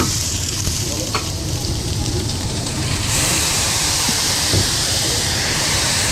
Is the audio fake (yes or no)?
yes